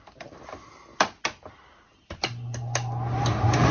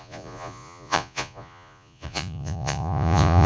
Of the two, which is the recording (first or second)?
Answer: first